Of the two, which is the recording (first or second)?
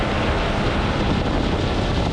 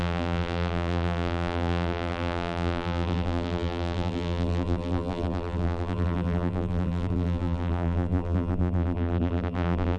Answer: first